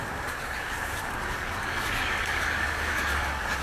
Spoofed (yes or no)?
yes